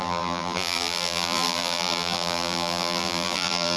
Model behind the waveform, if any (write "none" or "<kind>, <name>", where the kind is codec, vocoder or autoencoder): vocoder, BigVGAN v2